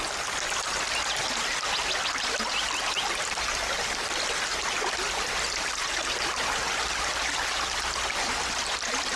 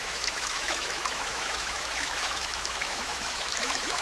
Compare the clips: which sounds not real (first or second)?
second